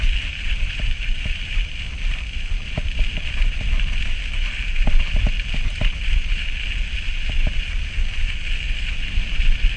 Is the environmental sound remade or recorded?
recorded